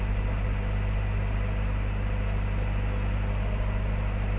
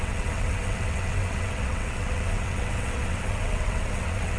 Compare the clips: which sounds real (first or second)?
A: first